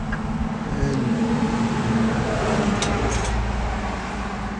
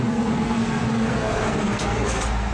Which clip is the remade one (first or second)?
second